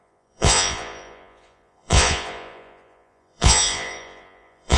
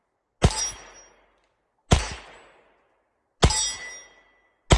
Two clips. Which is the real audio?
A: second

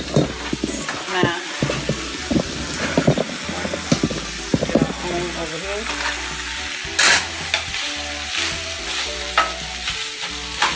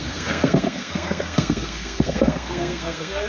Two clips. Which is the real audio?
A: first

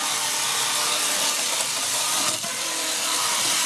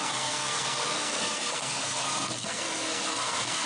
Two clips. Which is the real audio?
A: first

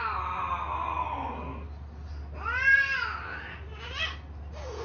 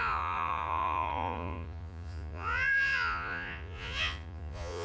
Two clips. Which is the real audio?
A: first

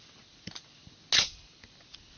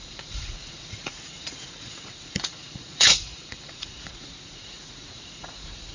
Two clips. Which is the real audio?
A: first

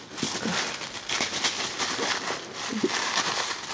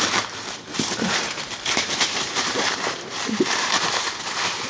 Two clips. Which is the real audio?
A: first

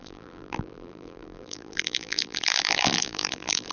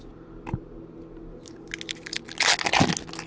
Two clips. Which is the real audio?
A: second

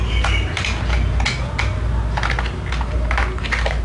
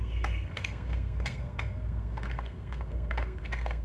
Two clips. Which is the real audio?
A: first